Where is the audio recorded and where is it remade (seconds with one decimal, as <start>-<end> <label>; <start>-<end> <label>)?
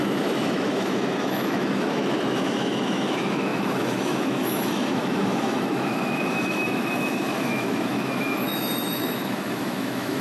0.0-10.2 remade